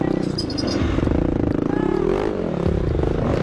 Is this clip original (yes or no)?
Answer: yes